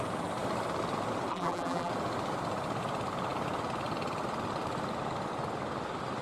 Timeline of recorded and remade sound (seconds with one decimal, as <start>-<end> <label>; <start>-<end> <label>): 0.0-1.3 recorded; 1.3-1.9 remade; 1.9-6.2 recorded